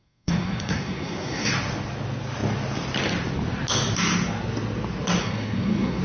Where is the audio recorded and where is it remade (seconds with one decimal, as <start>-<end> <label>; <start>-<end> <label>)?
0.0-1.5 remade; 1.5-5.2 recorded; 5.2-6.0 remade